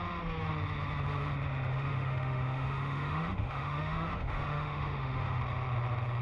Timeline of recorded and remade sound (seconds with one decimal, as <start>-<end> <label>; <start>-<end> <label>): 0.0-1.7 recorded; 1.7-5.4 remade; 5.4-6.2 recorded